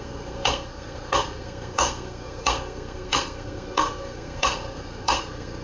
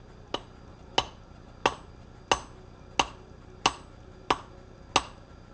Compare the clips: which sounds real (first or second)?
second